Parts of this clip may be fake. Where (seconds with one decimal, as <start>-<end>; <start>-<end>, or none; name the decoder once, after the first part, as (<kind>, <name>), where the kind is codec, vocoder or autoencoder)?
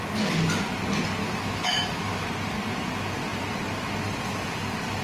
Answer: 1.2-2.3 (autoencoder, DAC-VAE)